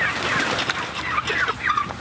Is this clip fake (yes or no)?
no